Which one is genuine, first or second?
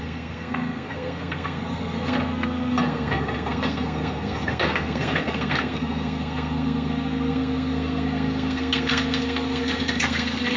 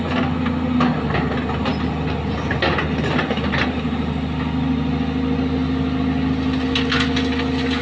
second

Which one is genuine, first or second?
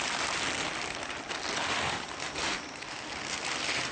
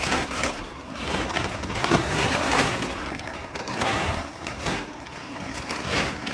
first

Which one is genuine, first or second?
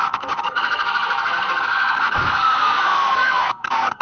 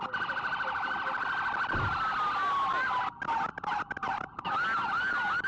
second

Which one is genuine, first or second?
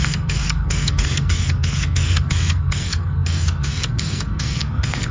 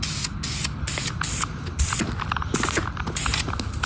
second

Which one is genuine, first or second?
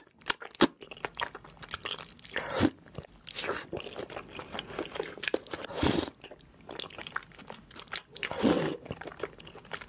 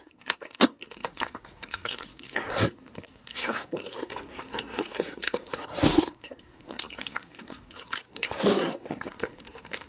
first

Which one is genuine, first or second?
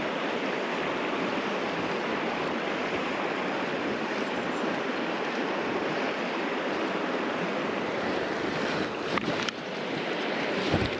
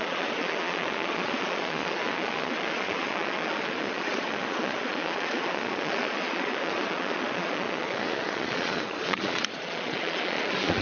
first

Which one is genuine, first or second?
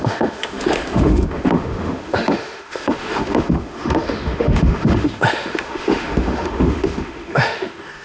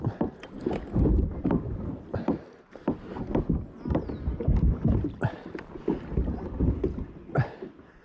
second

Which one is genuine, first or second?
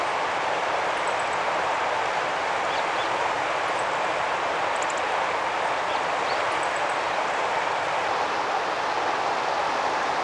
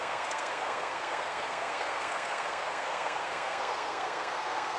first